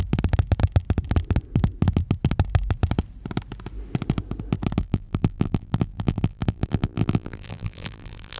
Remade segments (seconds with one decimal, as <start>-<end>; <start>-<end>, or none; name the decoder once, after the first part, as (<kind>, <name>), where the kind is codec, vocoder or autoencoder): 4.8-8.4 (vocoder, BigVGAN v2)